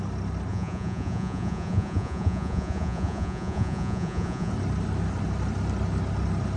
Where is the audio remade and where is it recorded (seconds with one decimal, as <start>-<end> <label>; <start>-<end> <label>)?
0.0-0.5 recorded; 0.5-4.5 remade; 4.5-6.6 recorded